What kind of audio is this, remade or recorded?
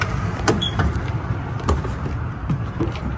remade